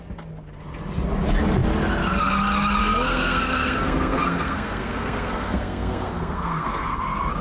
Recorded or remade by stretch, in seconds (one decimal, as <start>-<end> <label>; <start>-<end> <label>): 0.0-2.8 recorded; 2.8-7.0 remade; 7.0-7.4 recorded